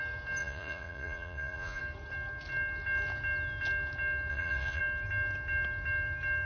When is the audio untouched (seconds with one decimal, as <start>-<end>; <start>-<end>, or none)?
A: 0.0-0.4; 1.8-4.3; 4.8-6.5